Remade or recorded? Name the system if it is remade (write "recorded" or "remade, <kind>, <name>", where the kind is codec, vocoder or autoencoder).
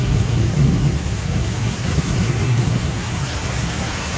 remade, codec, SNAC